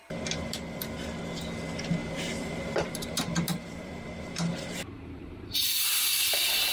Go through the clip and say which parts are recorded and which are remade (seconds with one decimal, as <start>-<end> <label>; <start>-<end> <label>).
0.0-2.0 recorded; 2.0-6.0 remade; 6.0-6.7 recorded